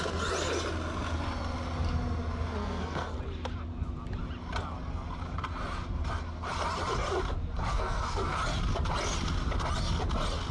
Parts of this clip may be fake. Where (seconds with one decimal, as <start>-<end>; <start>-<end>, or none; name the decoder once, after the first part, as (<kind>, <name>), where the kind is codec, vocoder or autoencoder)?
2.6-3.2 (codec, SNAC); 7.7-8.4